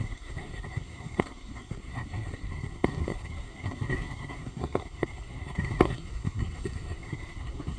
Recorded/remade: remade